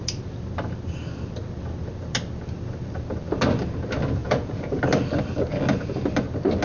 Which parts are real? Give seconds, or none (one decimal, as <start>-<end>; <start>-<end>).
0.0-4.2; 4.8-6.6